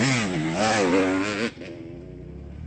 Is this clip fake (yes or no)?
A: no